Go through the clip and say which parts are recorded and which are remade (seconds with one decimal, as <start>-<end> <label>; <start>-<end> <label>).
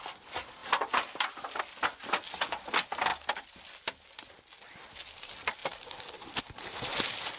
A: 0.0-0.6 recorded; 0.6-1.6 remade; 1.6-7.4 recorded